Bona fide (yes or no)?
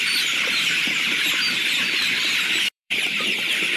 no